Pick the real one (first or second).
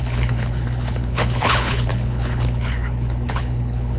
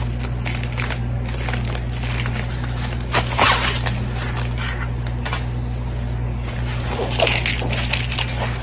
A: second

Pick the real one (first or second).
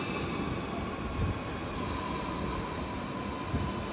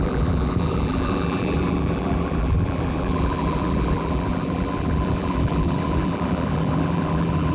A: first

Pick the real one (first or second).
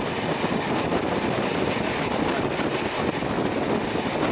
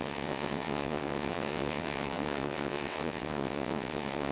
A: first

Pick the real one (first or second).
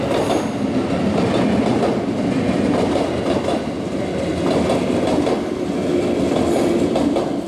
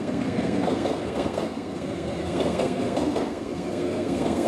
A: first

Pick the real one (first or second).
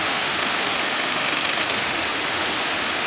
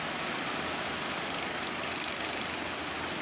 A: second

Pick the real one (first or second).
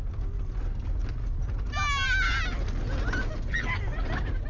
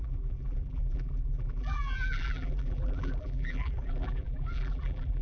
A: first